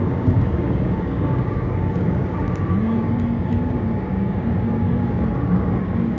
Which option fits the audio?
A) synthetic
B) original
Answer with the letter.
A